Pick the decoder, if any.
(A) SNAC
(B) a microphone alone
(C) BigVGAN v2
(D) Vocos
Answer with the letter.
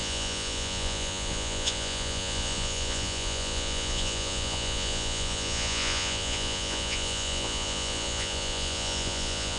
D